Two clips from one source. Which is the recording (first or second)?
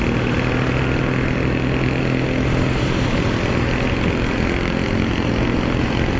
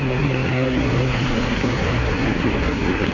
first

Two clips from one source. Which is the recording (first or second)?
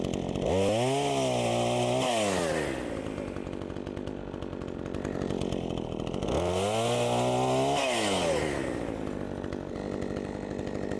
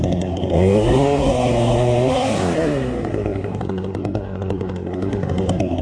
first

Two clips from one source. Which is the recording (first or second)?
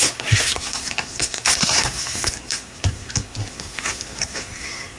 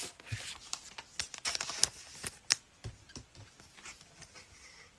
second